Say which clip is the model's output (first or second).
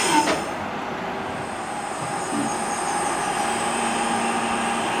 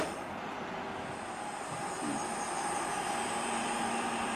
second